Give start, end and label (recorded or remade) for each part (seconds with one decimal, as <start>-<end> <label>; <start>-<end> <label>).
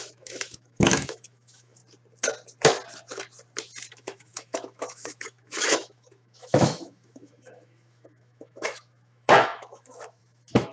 0.0-1.8 remade; 1.8-3.9 recorded; 3.9-10.7 remade